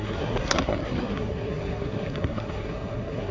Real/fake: fake